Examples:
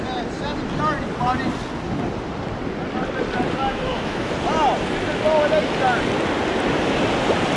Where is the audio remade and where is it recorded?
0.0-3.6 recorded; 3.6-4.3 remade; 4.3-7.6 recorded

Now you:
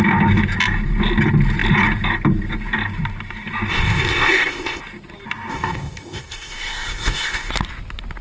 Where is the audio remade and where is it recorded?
0.0-3.7 recorded; 3.7-4.8 remade; 4.8-5.5 recorded; 5.5-7.5 remade; 7.5-8.2 recorded

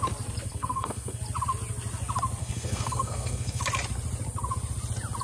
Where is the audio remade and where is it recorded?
0.0-0.5 recorded; 0.5-1.2 remade; 1.2-2.4 recorded; 2.4-3.6 remade; 3.6-5.2 recorded

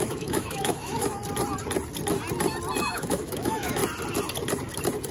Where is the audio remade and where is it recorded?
0.0-1.2 remade; 1.2-2.8 recorded; 2.8-3.8 remade; 3.8-5.1 recorded

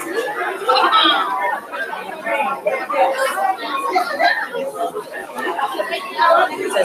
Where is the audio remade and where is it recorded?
0.0-5.2 recorded; 5.2-5.8 remade; 5.8-6.8 recorded